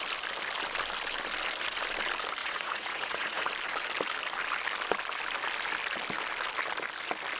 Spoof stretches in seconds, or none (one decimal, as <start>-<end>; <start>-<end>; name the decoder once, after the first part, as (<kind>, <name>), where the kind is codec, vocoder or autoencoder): 2.4-3.5 (vocoder, Vocos)